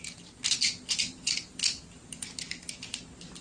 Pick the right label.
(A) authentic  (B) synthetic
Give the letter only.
A